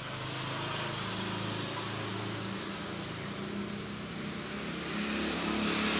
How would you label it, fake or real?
real